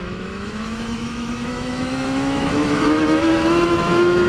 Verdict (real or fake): fake